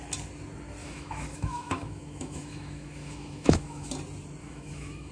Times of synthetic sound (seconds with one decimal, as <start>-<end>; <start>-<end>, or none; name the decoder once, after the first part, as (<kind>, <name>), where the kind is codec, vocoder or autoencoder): 0.8-3.9 (autoencoder, DAC-VAE); 4.4-5.1